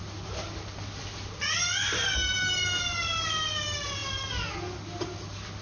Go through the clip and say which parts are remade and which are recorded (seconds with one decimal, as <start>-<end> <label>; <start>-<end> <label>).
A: 0.0-5.6 recorded